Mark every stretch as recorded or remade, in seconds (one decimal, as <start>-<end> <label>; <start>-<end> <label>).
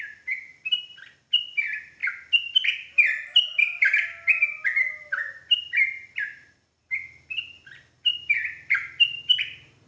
0.0-9.9 recorded